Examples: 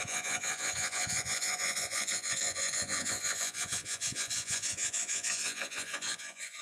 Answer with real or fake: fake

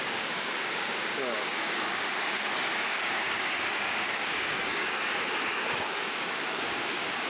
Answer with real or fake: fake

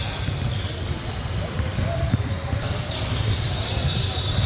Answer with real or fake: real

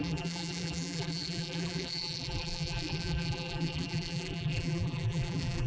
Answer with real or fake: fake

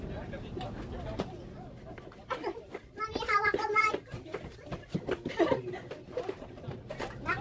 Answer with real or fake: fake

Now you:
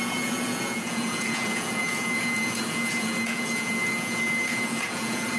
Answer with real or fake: fake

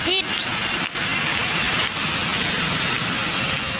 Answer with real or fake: real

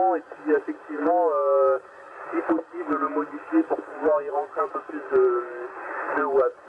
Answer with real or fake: real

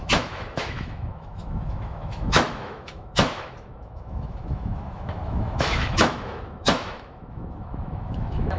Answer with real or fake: fake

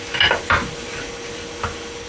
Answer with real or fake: real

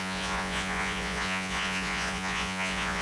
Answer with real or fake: fake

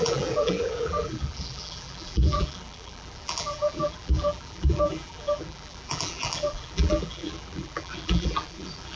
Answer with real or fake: fake